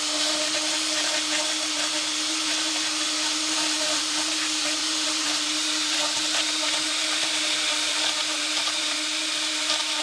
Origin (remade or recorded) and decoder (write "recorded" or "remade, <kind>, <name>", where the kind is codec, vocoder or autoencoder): remade, vocoder, BigVGAN v2